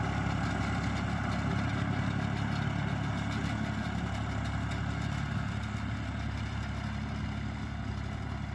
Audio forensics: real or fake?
real